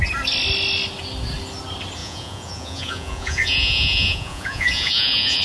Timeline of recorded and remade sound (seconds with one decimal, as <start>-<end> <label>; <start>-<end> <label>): 0.0-2.0 recorded; 2.0-5.4 remade